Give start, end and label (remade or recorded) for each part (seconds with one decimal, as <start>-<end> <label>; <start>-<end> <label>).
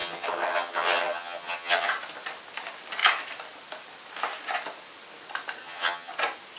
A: 0.0-1.9 remade; 1.9-5.6 recorded; 5.6-6.1 remade; 6.1-6.6 recorded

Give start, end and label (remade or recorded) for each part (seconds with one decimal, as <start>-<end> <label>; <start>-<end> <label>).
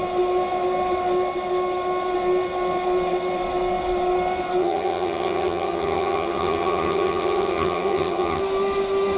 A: 0.0-4.6 recorded; 4.6-8.4 remade; 8.4-9.2 recorded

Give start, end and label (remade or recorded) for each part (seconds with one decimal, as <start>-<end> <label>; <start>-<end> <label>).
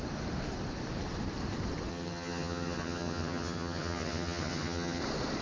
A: 0.0-1.9 recorded; 1.9-5.0 remade; 5.0-5.4 recorded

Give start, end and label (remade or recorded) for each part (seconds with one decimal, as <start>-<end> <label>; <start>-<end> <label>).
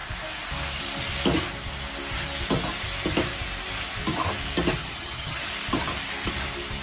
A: 0.0-4.8 recorded; 4.8-5.5 remade; 5.5-6.8 recorded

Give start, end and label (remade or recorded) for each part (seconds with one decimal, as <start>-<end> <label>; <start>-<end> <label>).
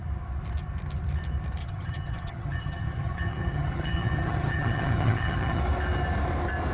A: 0.0-1.6 recorded; 1.6-5.6 remade; 5.6-6.7 recorded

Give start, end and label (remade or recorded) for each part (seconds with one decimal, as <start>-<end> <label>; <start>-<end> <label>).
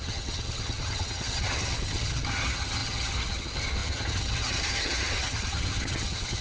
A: 0.0-6.4 remade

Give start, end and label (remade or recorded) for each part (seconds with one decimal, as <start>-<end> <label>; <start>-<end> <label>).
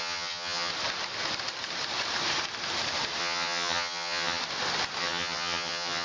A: 0.0-0.7 remade; 0.7-3.2 recorded; 3.2-4.4 remade; 4.4-5.0 recorded; 5.0-6.0 remade